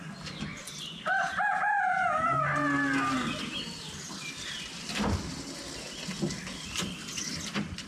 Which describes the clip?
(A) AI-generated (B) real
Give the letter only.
B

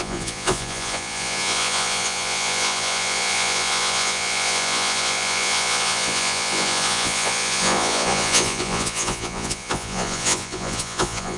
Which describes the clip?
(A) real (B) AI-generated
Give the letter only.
B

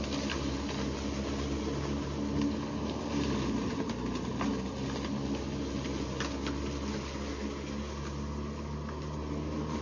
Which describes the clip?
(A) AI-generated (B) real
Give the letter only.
B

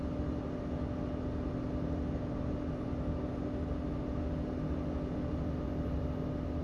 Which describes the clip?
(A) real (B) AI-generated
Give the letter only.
A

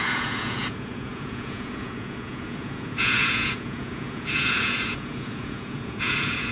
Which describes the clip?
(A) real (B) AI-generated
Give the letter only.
B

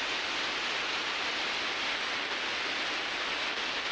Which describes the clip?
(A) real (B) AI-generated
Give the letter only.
A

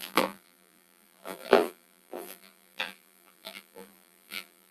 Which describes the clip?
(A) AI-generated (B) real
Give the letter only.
A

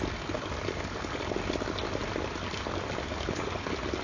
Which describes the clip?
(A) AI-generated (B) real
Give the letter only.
B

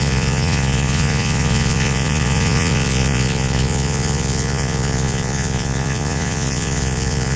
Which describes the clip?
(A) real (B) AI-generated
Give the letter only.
B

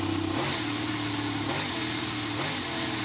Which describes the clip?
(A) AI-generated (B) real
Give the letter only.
B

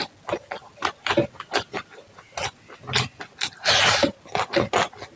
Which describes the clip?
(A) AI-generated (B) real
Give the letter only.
B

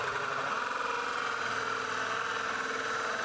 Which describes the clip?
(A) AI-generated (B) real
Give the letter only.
B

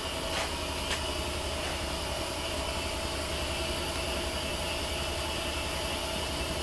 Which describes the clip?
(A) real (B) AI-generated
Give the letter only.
A